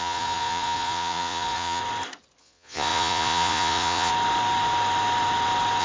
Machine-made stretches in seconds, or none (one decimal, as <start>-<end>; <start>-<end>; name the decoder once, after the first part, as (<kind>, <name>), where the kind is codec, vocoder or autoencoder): 0.0-1.8 (vocoder, Vocos); 2.4-4.1